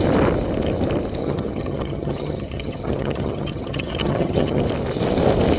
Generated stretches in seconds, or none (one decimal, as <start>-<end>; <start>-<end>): 1.2-4.6